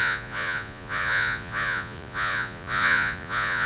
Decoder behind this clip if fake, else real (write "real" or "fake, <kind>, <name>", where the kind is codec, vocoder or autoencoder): fake, vocoder, Vocos